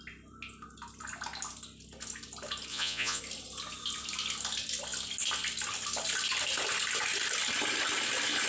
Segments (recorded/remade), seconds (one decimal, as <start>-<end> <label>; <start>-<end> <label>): 0.0-2.7 recorded; 2.7-3.2 remade; 3.2-8.5 recorded

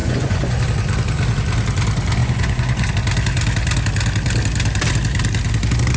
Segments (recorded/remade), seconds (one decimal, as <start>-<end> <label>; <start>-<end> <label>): 0.0-0.6 remade; 0.6-2.2 recorded; 2.2-2.9 remade; 2.9-6.0 recorded

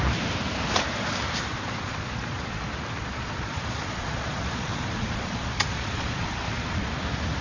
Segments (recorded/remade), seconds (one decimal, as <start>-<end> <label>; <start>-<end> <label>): 0.0-1.5 recorded; 1.5-2.6 remade; 2.6-3.0 recorded; 3.0-6.9 remade; 6.9-7.4 recorded

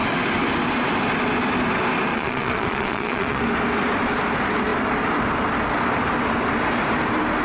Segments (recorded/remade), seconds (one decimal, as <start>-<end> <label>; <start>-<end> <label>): 0.0-2.1 recorded; 2.1-3.4 remade; 3.4-7.4 recorded

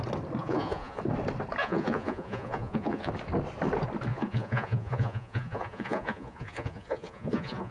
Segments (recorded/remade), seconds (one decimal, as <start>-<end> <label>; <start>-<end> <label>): 0.0-0.4 recorded; 0.4-1.0 remade; 1.0-1.6 recorded; 1.6-3.1 remade; 3.1-4.1 recorded; 4.1-7.7 remade

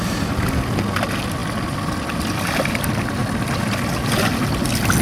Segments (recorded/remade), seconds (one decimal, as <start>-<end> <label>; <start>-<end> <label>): 0.0-5.0 recorded

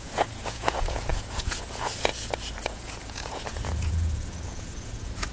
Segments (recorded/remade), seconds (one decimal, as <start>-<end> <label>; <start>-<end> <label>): 0.0-5.3 remade